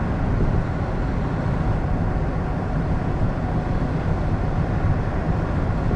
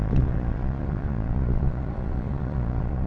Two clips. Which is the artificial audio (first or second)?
second